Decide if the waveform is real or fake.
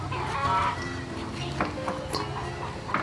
real